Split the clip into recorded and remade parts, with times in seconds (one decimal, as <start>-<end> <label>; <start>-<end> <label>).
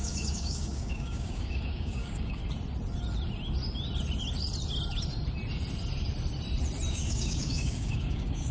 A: 0.0-2.4 remade; 2.4-6.9 recorded; 6.9-8.5 remade